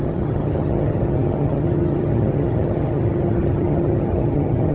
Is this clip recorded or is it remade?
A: remade